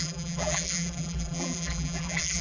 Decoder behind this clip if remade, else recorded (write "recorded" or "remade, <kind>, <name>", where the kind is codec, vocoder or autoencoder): remade, vocoder, BigVGAN v2